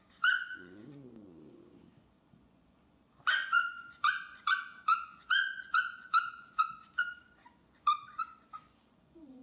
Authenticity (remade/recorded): remade